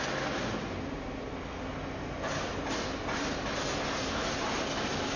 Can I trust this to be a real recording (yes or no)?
yes